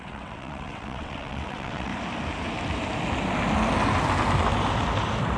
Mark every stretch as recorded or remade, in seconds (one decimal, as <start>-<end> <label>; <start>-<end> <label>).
0.0-1.9 remade; 1.9-5.4 recorded